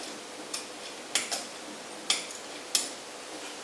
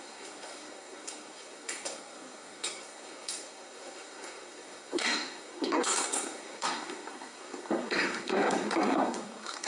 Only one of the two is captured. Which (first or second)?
first